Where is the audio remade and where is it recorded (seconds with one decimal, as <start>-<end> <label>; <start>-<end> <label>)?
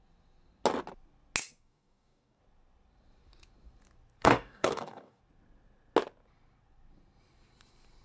0.0-1.4 recorded; 1.4-2.4 remade; 2.4-4.2 recorded; 4.2-5.2 remade; 5.2-8.0 recorded